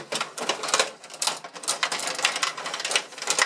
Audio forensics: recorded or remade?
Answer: recorded